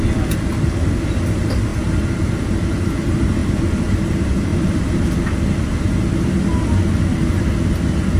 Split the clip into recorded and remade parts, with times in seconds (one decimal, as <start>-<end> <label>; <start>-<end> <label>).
0.0-4.5 recorded; 4.5-5.1 remade; 5.1-8.2 recorded

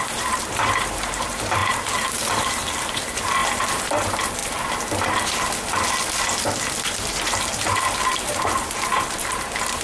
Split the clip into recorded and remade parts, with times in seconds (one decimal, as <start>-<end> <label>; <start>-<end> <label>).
0.0-4.4 remade; 4.4-7.1 recorded; 7.1-9.8 remade

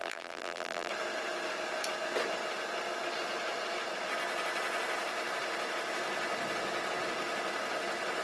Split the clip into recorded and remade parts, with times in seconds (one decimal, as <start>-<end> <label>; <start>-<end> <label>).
0.0-0.9 remade; 0.9-8.2 recorded

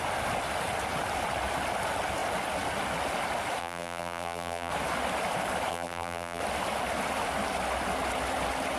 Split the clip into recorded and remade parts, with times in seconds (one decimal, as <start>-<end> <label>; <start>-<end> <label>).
0.0-3.6 recorded; 3.6-4.7 remade; 4.7-5.7 recorded; 5.7-6.4 remade; 6.4-8.8 recorded

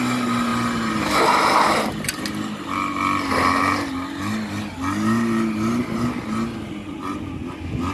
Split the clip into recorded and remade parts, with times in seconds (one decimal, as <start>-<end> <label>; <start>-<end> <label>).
0.0-7.9 recorded